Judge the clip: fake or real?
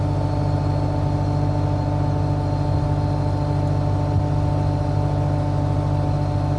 real